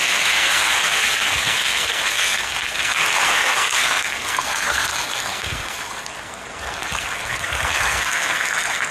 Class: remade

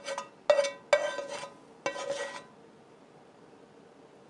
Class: recorded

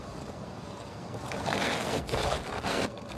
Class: remade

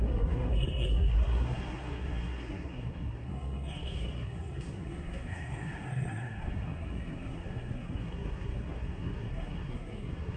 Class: remade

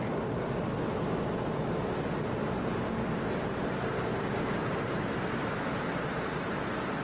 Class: recorded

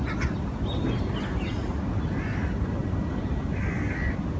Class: recorded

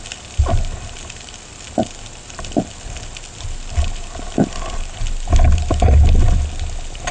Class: recorded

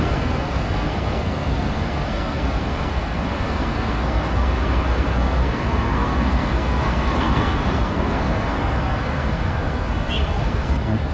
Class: remade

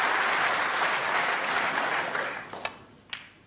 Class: recorded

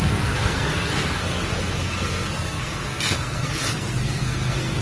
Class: remade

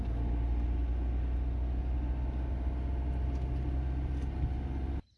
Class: recorded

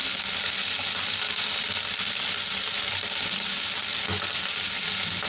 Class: recorded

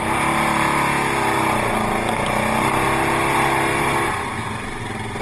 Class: recorded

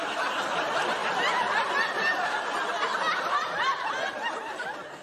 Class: recorded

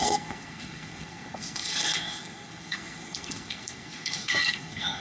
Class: remade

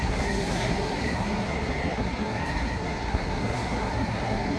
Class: remade